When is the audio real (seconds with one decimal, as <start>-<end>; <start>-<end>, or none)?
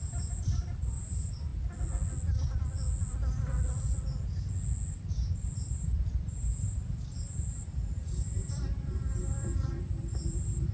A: 1.5-4.9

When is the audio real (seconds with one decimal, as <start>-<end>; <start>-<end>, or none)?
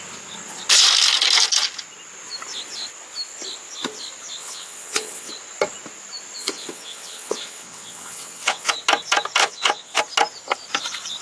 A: 0.0-4.4; 5.3-6.4; 8.7-9.4; 10.0-11.2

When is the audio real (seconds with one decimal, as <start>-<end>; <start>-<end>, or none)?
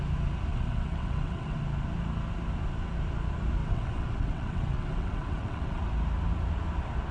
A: 0.0-0.5; 1.6-3.6; 5.8-7.1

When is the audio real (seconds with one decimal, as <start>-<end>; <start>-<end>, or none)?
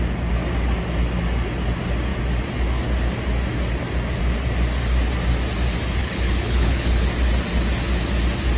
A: 0.0-6.0; 7.1-8.6